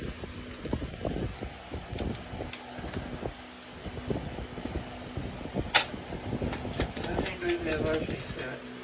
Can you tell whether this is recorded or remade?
recorded